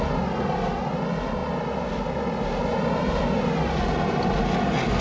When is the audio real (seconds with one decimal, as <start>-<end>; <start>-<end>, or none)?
0.0-5.0

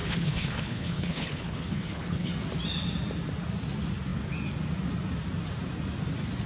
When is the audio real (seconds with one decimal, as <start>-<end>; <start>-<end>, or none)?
2.3-6.5

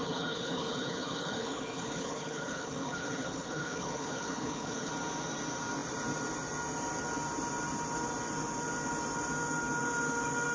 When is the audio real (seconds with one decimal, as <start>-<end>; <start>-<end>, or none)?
4.9-10.5

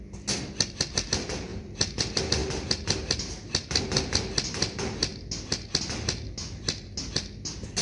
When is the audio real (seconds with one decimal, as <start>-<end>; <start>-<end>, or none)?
0.0-7.8